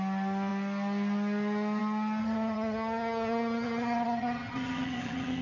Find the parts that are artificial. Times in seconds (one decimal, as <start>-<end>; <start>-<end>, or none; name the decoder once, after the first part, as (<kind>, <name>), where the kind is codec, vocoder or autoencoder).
2.2-5.4 (vocoder, HiFi-GAN)